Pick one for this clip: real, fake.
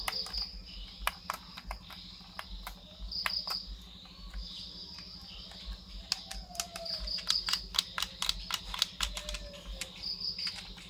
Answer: real